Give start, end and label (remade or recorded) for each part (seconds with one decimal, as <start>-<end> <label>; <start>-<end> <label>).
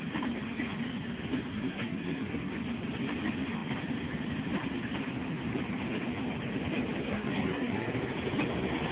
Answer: 0.0-1.5 recorded; 1.5-2.5 remade; 2.5-7.1 recorded; 7.1-7.9 remade; 7.9-8.9 recorded